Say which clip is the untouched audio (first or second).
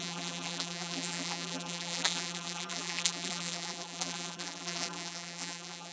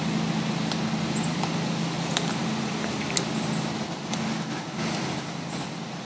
second